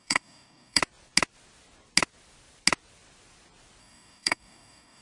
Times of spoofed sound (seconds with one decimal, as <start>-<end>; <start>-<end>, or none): 0.0-0.8; 3.8-5.0